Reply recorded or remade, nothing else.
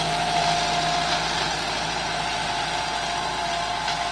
recorded